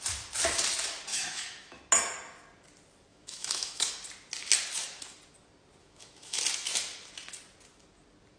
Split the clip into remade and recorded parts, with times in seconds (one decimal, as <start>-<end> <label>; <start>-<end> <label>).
0.0-1.1 recorded; 1.1-1.8 remade; 1.8-3.1 recorded; 3.1-3.9 remade; 3.9-5.8 recorded; 5.8-6.4 remade; 6.4-8.4 recorded